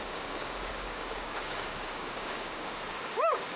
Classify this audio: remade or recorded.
remade